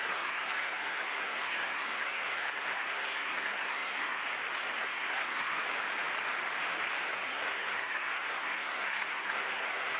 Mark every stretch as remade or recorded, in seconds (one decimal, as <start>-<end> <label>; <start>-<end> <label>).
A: 0.0-4.2 remade; 4.2-4.8 recorded; 4.8-5.6 remade; 5.6-7.1 recorded; 7.1-10.0 remade